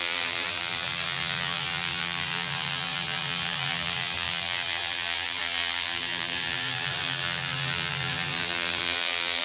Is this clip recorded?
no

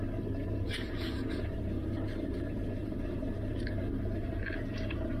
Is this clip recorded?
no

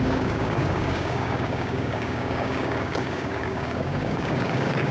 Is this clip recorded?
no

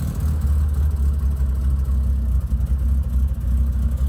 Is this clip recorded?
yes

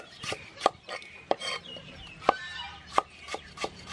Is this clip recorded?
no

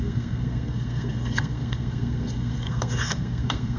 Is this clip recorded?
no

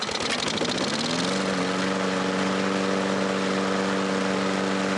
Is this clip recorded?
yes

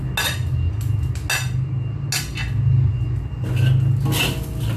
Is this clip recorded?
yes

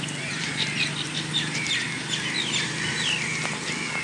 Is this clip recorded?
yes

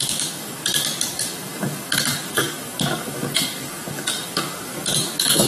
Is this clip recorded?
no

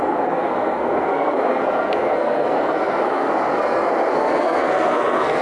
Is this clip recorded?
no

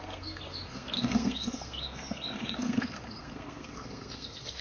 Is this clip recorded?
no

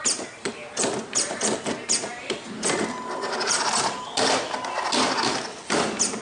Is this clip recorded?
yes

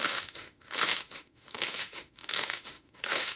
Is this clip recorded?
no